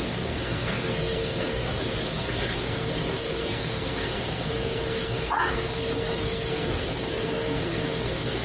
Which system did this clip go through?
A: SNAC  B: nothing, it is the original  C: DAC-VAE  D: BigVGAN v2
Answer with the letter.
A